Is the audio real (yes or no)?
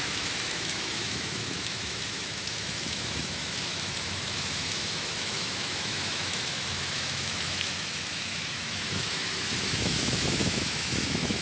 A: no